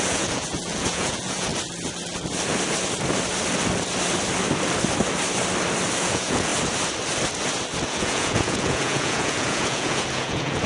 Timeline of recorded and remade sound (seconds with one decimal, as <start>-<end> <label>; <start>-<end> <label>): 0.0-1.5 remade; 1.5-6.0 recorded; 6.0-6.5 remade; 6.5-8.0 recorded; 8.0-10.7 remade